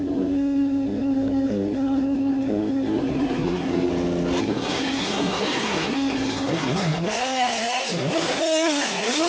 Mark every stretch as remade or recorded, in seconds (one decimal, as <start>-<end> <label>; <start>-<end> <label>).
0.0-3.9 remade; 3.9-4.4 recorded; 4.4-9.3 remade

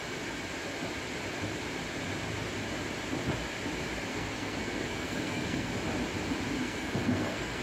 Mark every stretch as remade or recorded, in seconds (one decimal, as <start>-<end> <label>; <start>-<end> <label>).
0.0-4.1 recorded; 4.1-5.7 remade; 5.7-6.6 recorded; 6.6-7.6 remade